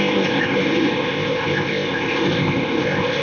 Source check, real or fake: fake